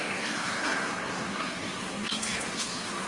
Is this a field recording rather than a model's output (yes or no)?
no